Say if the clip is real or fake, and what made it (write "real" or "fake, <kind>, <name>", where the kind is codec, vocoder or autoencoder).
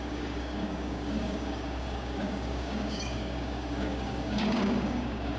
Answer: fake, codec, DAC